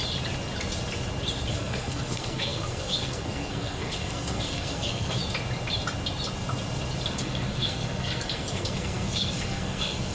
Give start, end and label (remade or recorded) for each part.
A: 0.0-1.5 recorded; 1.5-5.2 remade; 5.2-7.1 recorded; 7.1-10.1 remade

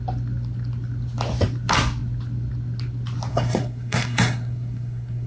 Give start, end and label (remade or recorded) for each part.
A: 0.0-3.3 recorded; 3.3-5.3 remade

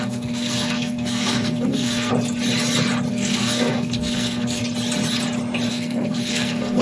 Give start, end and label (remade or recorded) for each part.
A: 0.0-2.1 remade; 2.1-3.1 recorded; 3.1-4.6 remade; 4.6-5.7 recorded; 5.7-6.8 remade